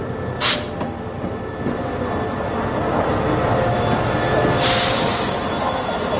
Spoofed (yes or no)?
no